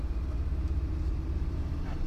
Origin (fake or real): fake